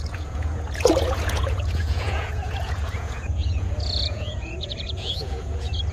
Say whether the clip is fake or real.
fake